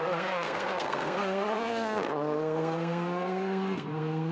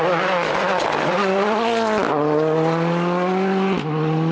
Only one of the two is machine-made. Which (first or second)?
first